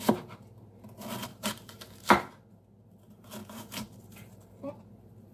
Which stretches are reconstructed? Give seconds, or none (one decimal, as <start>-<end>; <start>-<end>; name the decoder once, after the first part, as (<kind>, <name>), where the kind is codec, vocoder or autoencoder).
1.3-2.3 (vocoder, BigVGAN v2); 3.4-4.7